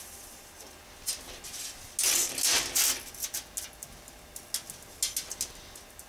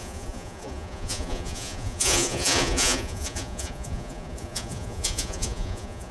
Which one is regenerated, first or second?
second